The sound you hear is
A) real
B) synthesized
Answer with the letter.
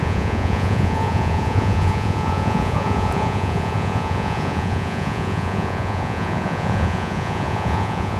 B